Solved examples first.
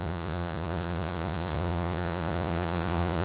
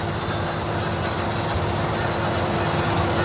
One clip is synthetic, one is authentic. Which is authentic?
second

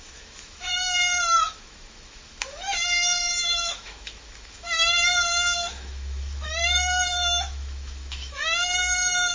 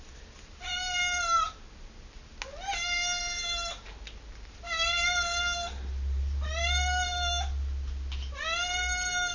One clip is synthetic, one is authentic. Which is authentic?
second